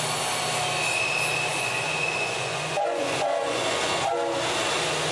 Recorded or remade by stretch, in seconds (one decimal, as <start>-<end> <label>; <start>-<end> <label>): 0.0-1.5 recorded; 1.5-4.1 remade; 4.1-5.1 recorded